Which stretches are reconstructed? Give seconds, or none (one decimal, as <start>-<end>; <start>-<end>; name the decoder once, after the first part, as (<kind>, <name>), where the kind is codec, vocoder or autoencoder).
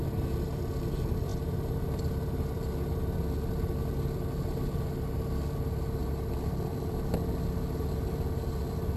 6.0-6.7 (vocoder, BigVGAN v2)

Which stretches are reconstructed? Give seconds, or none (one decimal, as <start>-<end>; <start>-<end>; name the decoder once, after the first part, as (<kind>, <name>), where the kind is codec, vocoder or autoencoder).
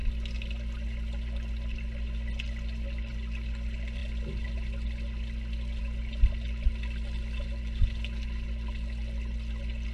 none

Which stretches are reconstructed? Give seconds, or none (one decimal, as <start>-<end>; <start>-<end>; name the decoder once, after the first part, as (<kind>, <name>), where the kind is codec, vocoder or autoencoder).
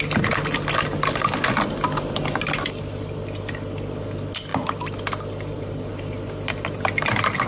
none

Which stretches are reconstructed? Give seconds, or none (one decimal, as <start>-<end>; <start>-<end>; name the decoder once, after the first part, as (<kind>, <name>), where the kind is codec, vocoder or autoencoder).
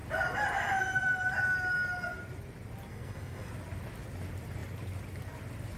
2.9-3.5 (codec, SNAC)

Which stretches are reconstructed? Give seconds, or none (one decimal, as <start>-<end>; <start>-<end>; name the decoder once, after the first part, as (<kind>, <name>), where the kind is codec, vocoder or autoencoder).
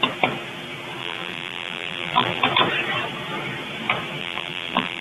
1.0-2.4 (vocoder, BigVGAN v2); 4.2-5.0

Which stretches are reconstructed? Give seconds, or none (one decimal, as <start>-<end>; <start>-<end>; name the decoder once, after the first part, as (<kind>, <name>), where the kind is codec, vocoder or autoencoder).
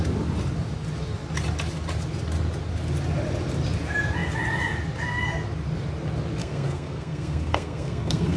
6.4-8.4 (codec, SNAC)